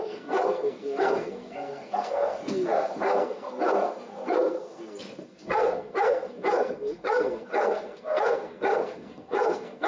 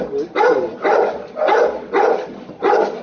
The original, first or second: second